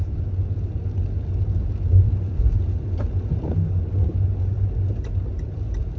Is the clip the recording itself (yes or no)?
yes